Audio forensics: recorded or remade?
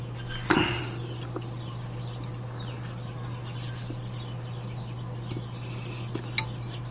recorded